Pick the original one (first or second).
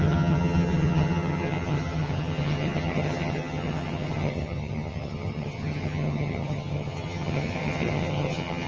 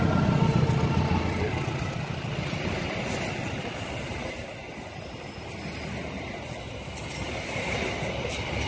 second